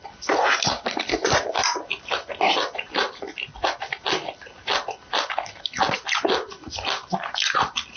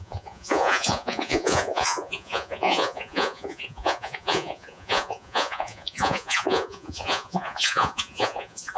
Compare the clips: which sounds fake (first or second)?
second